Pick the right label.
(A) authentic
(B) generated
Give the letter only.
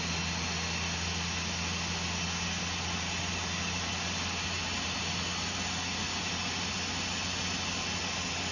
A